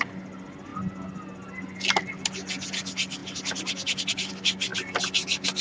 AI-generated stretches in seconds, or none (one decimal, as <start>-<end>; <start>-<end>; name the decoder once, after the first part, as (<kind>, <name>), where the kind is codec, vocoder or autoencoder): none